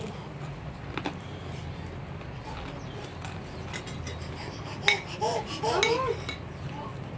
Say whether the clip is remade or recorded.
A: recorded